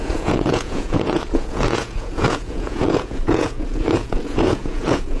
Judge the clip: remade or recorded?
remade